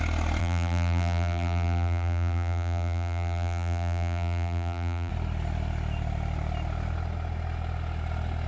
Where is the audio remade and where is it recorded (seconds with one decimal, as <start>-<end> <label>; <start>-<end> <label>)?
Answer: 0.0-0.4 recorded; 0.4-5.1 remade; 5.1-8.5 recorded